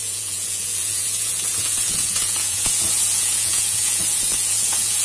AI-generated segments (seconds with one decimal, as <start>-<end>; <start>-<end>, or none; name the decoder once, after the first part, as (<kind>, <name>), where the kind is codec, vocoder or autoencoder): 0.0-5.0 (vocoder, Vocos)